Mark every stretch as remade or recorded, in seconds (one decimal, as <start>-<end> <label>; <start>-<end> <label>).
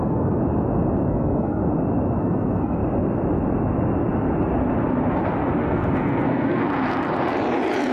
0.0-0.4 remade; 0.4-1.1 recorded; 1.1-1.6 remade; 1.6-2.2 recorded; 2.2-2.8 remade; 2.8-5.6 recorded; 5.6-6.6 remade; 6.6-7.9 recorded